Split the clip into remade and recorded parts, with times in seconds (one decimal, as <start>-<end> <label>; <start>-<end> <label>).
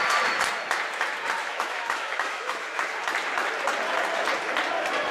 0.0-1.4 recorded; 1.4-2.8 remade; 2.8-5.1 recorded